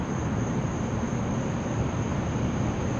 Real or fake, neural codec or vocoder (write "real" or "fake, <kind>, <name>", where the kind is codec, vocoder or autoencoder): real